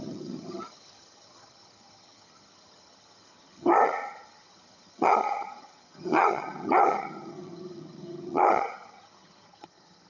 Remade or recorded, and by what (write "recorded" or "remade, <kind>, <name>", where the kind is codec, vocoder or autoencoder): remade, vocoder, HiFi-GAN